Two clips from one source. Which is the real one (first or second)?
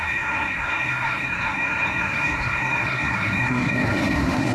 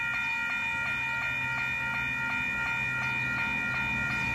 second